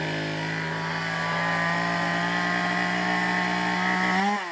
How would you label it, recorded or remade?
recorded